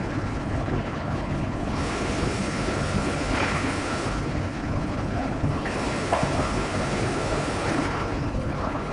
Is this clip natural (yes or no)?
no